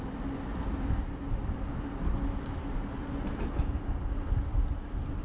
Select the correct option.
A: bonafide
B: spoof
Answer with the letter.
A